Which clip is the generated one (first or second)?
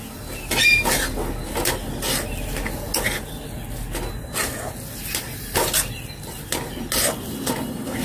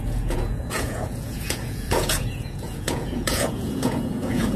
second